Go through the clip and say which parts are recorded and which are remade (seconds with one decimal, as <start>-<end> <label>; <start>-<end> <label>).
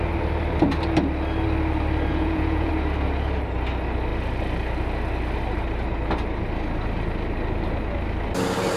0.0-2.1 recorded; 2.1-2.7 remade; 2.7-8.8 recorded